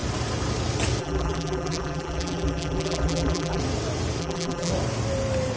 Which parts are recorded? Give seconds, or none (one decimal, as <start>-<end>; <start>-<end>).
0.0-1.0; 3.6-4.2; 4.7-5.6